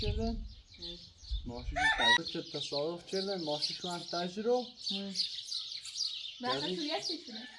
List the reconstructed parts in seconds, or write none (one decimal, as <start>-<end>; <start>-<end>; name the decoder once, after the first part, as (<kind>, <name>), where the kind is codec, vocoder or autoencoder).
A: none